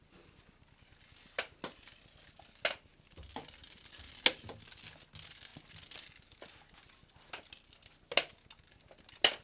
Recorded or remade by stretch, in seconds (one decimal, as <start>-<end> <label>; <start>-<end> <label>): 0.0-9.4 recorded